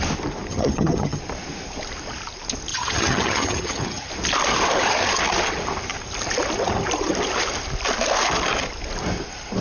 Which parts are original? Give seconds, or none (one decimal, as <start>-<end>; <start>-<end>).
0.0-0.5; 1.2-2.7; 4.1-9.6